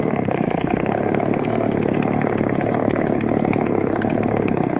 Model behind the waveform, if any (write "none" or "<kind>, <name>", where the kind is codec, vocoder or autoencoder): codec, SNAC